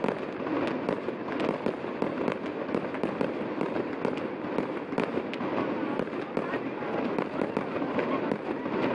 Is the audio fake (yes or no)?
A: no